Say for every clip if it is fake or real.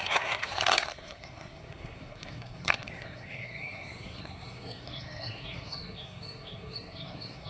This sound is fake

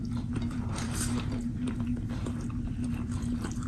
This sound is fake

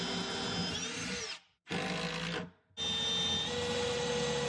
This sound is real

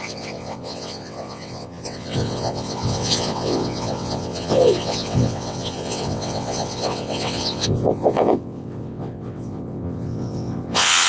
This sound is fake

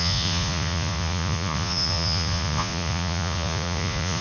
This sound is fake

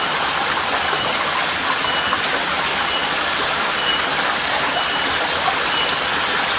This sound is real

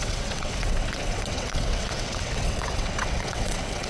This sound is fake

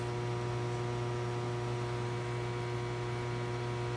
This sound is real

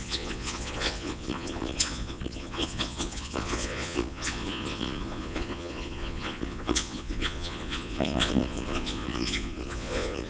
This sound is fake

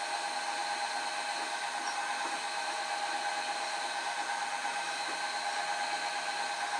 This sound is real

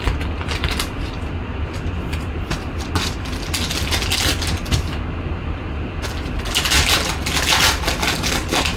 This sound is real